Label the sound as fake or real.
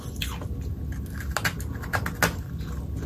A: real